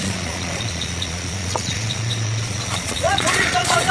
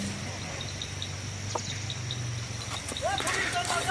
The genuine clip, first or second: second